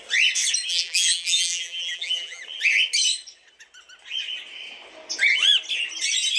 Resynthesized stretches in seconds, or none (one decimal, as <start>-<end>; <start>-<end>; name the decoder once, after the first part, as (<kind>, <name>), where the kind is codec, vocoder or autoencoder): 0.7-2.4 (vocoder, BigVGAN v2)